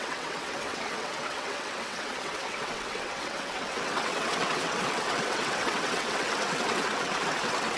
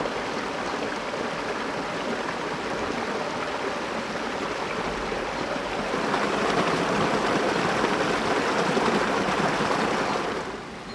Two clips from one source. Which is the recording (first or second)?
second